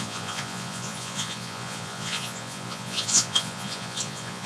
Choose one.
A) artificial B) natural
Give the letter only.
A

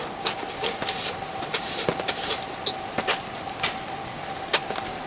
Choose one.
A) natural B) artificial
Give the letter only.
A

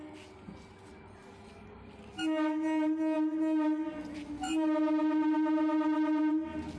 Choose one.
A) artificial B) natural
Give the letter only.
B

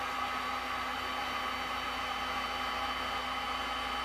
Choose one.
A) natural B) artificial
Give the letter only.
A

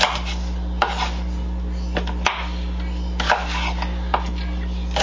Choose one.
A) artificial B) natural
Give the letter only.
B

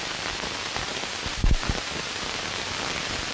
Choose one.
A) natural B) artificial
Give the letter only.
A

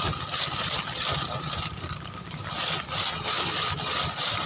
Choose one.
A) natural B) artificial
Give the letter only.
A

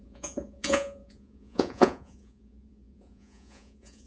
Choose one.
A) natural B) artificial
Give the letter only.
B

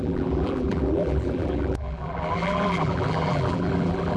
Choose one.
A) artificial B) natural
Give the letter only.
A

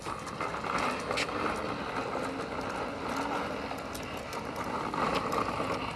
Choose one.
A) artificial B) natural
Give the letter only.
B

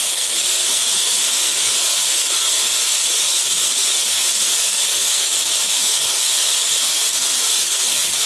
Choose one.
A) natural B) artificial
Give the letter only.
B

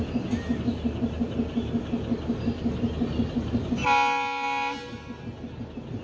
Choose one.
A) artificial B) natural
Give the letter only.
B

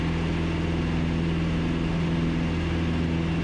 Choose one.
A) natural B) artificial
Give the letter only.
A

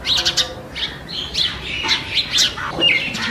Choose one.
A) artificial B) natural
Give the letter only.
B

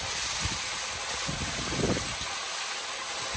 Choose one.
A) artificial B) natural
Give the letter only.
B